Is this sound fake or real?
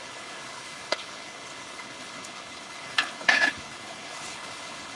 fake